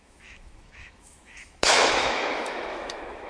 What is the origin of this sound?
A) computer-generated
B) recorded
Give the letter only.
A